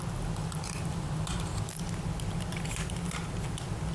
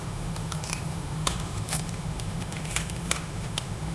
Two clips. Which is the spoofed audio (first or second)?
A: second